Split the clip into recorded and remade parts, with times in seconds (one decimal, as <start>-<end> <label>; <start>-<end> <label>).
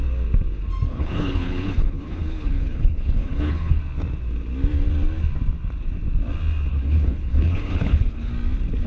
0.0-0.9 recorded; 0.9-3.8 remade; 3.8-6.7 recorded; 6.7-8.3 remade; 8.3-8.9 recorded